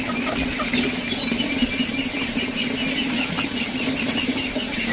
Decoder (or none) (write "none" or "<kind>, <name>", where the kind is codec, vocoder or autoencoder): none